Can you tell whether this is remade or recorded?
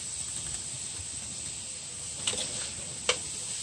recorded